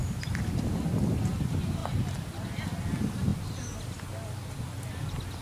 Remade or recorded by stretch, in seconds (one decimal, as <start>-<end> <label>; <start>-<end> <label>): 0.0-0.8 remade; 0.8-5.4 recorded

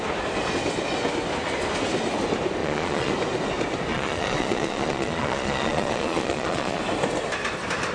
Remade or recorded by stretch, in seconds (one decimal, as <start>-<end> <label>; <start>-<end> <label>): 0.0-2.6 recorded; 2.6-3.1 remade; 3.1-3.9 recorded; 3.9-6.8 remade; 6.8-7.9 recorded